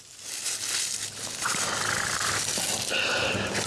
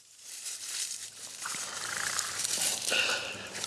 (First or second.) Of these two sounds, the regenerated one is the second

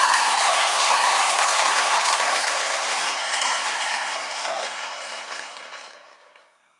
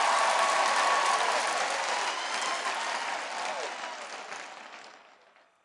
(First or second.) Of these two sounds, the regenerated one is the first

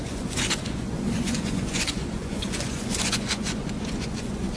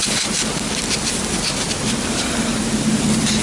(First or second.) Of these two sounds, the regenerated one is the first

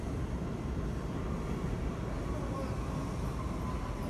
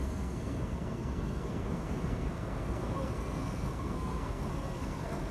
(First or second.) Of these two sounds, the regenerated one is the second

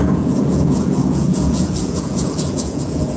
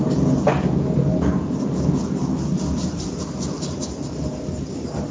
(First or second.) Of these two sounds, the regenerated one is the first